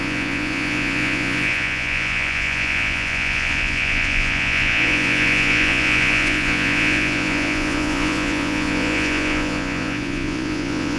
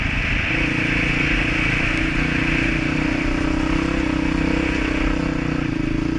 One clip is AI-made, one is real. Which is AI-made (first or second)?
first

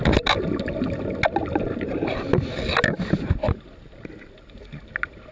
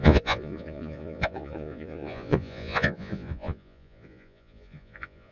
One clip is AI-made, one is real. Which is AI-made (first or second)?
second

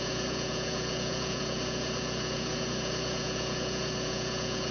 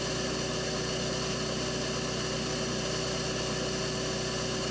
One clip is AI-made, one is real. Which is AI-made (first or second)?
first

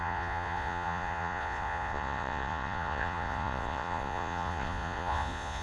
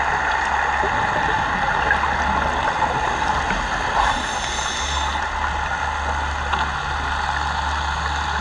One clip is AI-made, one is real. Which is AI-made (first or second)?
first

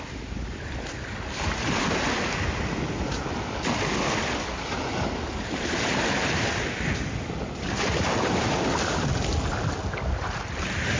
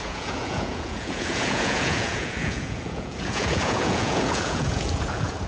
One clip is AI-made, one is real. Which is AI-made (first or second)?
second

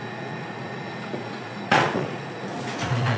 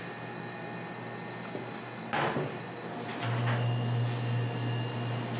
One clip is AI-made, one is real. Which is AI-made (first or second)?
first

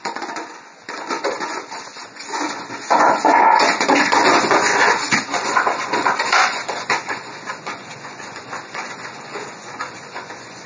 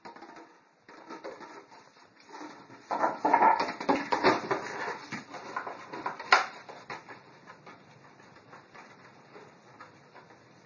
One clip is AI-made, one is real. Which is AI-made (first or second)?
first